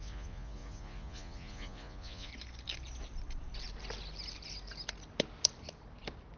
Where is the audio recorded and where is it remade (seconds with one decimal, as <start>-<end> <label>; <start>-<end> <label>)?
0.0-2.3 remade; 2.3-6.4 recorded